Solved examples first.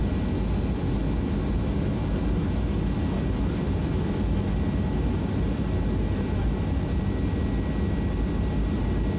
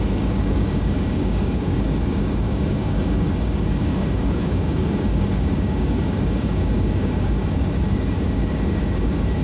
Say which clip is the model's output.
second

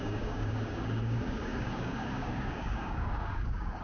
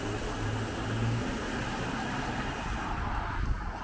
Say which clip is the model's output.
first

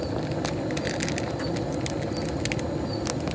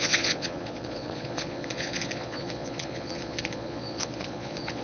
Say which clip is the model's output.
second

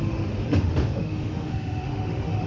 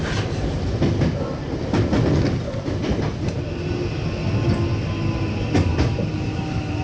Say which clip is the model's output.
first